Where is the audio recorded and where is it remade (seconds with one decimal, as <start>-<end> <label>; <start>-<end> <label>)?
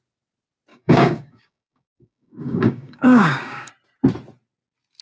0.0-0.7 recorded; 0.7-3.7 remade; 3.7-5.0 recorded